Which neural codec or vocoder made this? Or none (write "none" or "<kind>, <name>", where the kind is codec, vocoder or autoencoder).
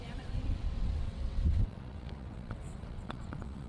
vocoder, WaveNeXt